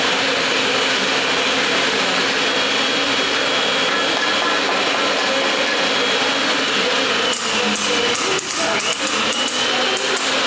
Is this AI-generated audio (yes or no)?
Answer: no